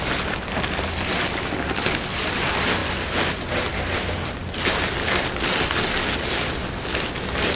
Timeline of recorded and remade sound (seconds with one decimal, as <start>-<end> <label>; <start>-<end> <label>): 0.0-7.6 recorded